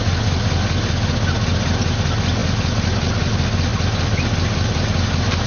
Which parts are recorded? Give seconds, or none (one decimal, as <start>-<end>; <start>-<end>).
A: 0.0-5.5